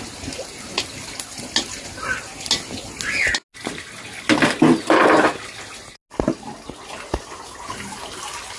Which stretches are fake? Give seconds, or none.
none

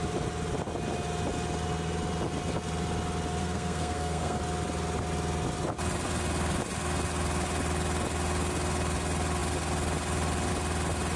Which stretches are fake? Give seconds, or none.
3.4-4.4 (codec, SNAC)

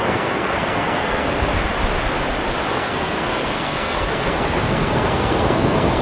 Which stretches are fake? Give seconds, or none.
0.0-1.6 (codec, SNAC); 2.7-6.0

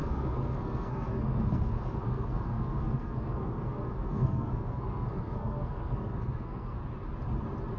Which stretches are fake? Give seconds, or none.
0.0-6.8 (codec, SNAC)

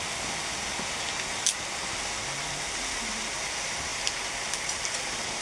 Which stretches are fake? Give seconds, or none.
none

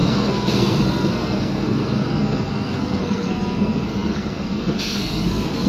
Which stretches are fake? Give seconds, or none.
0.0-5.7 (codec, SNAC)

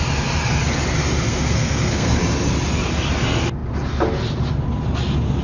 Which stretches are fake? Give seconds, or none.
1.3-2.2 (codec, SNAC)